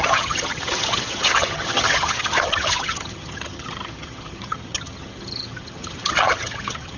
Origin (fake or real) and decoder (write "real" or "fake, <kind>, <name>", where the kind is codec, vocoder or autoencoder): fake, vocoder, HiFi-GAN